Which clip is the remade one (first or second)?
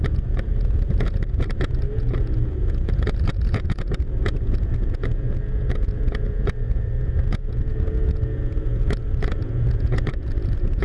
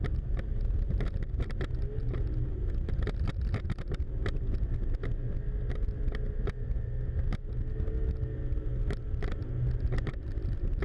first